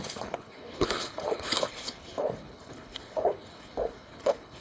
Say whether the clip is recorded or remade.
remade